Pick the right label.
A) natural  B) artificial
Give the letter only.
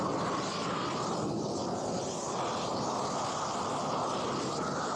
A